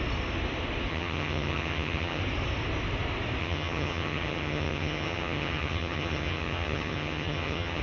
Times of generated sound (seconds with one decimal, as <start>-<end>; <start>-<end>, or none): 0.9-2.2; 3.4-7.8